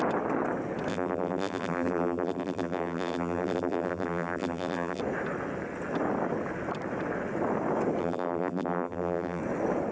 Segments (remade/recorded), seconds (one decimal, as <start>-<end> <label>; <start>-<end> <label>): 0.0-0.9 recorded; 0.9-5.0 remade; 5.0-8.0 recorded; 8.0-9.4 remade; 9.4-9.9 recorded